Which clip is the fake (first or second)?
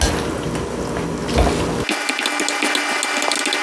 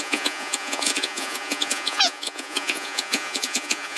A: second